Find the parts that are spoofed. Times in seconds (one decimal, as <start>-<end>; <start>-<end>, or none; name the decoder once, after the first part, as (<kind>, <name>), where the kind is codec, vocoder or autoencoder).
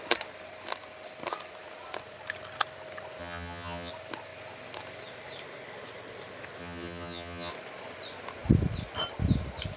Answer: 3.2-3.9 (vocoder, HiFi-GAN); 6.6-7.5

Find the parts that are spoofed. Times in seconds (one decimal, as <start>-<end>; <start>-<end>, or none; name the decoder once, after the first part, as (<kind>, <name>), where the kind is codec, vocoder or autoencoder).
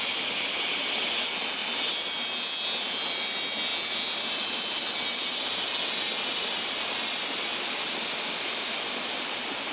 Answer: none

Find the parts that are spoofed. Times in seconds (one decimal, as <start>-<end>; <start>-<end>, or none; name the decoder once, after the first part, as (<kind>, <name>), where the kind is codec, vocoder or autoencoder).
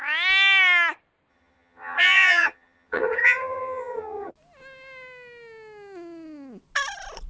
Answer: 1.3-4.3 (vocoder, HiFi-GAN)